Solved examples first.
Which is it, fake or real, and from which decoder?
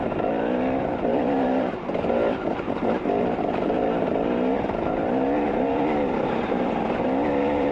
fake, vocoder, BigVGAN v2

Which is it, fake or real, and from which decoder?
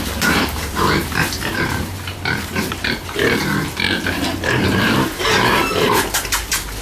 fake, vocoder, BigVGAN v2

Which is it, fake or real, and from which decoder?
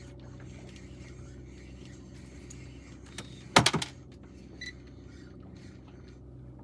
real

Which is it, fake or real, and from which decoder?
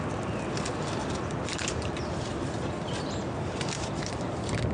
fake, vocoder, BigVGAN v2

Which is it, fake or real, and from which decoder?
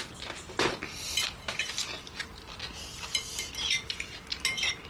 real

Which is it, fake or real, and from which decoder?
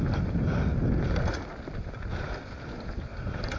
real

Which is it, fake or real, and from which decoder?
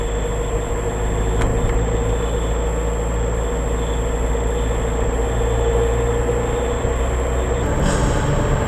real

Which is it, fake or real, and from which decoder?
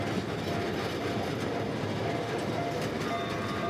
real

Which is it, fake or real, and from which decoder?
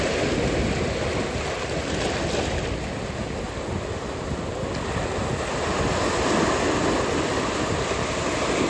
real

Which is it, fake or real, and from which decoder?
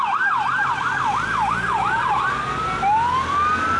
real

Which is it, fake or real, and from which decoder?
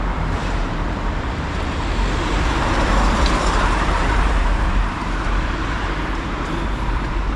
fake, vocoder, BigVGAN v2